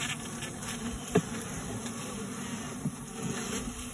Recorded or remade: recorded